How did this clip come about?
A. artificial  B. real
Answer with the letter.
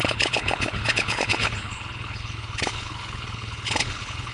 A